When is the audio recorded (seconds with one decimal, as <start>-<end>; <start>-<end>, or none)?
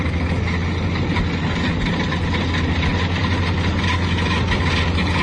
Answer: 0.0-5.2